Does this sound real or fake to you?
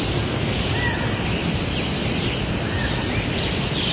real